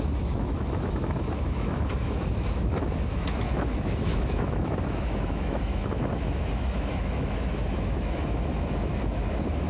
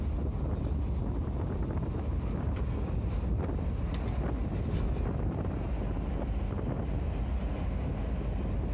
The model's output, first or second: first